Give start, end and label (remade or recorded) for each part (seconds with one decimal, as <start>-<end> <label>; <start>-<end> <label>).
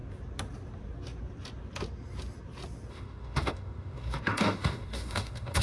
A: 0.0-2.9 recorded; 2.9-5.6 remade